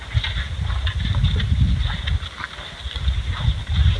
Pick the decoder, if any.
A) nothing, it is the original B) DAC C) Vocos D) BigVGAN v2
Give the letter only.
A